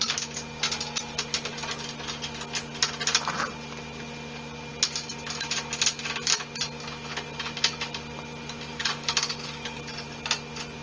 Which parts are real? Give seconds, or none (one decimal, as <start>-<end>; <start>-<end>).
0.0-8.7; 9.8-10.8